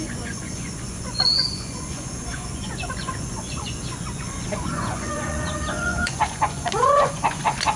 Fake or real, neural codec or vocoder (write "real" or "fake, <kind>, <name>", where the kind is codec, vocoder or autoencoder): fake, vocoder, Vocos